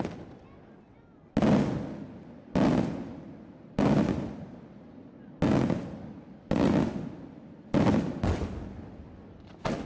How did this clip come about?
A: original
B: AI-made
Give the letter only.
A